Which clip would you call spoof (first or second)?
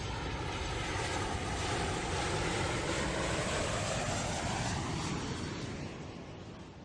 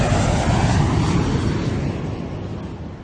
first